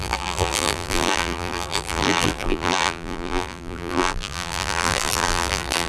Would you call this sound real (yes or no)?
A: no